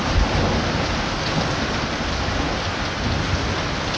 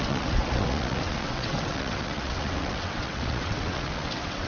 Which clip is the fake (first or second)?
second